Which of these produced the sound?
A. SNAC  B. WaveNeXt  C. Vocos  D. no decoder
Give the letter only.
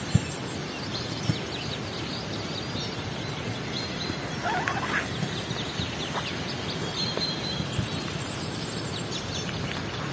D